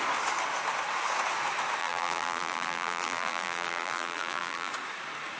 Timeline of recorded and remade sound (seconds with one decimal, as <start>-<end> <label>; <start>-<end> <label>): 0.0-1.8 recorded; 1.8-4.7 remade; 4.7-5.4 recorded